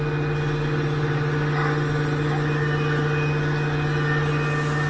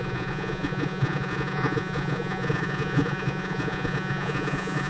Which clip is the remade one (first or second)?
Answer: second